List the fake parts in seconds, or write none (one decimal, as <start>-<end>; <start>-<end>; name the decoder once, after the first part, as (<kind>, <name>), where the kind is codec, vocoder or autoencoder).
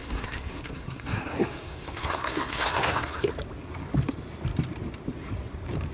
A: 0.0-3.3 (codec, SNAC)